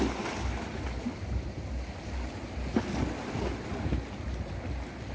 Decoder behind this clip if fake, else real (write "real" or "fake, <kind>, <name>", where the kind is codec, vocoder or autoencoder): real